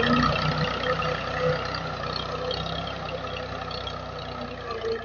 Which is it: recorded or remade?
recorded